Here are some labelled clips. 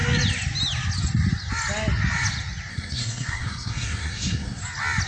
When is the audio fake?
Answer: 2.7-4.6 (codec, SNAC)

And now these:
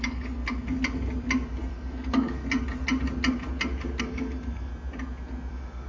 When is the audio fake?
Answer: 0.0-0.4 (codec, DAC); 1.7-2.4; 4.0-4.7; 5.5-5.9

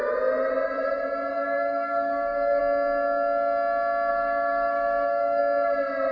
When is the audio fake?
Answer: 1.3-2.6 (codec, DAC); 4.1-5.4

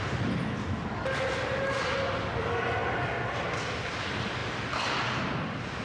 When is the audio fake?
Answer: none

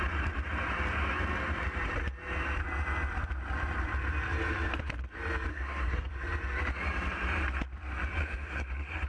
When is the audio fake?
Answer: 5.5-6.1 (codec, SNAC); 8.2-9.1